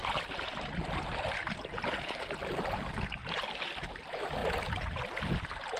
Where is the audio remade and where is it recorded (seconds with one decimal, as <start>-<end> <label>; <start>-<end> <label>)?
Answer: 0.0-5.8 recorded